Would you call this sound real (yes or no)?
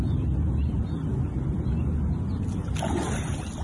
yes